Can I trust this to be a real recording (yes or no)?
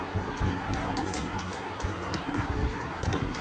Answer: no